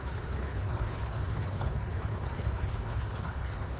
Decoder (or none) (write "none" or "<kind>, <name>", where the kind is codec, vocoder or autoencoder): codec, HILCodec